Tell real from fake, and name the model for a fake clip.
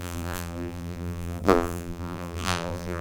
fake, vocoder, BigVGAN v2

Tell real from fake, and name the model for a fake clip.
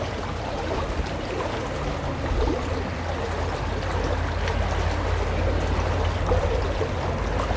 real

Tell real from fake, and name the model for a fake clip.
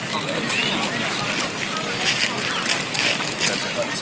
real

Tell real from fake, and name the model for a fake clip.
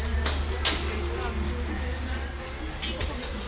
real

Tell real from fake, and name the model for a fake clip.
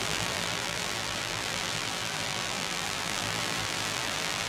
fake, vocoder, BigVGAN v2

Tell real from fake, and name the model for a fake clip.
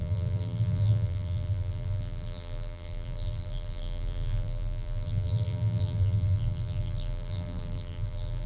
fake, vocoder, BigVGAN v2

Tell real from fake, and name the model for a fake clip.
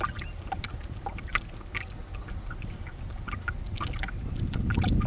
real